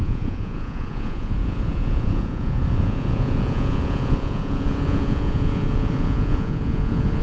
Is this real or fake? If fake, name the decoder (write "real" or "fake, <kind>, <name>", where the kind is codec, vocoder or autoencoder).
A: fake, vocoder, Vocos